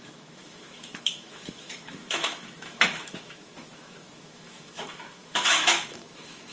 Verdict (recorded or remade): remade